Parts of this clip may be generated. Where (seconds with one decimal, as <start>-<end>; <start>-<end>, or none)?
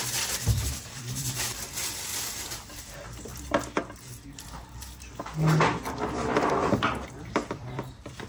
0.0-2.1; 2.7-3.3; 6.5-8.3